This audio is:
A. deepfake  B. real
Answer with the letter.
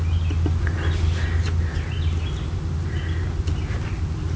B